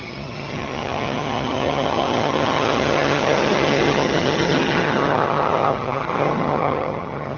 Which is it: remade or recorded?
remade